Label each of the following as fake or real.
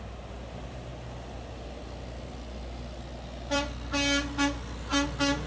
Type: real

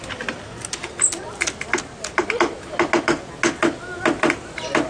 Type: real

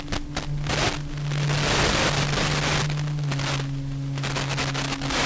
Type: real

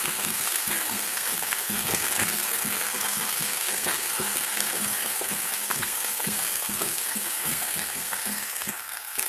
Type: fake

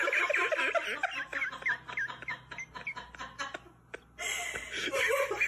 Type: real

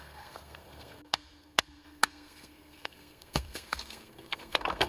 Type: fake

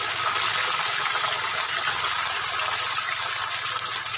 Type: real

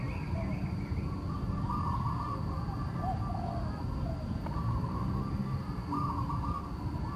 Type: real